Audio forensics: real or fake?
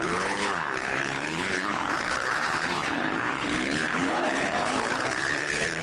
fake